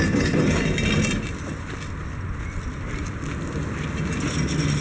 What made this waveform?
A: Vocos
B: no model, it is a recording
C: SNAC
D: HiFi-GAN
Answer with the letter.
B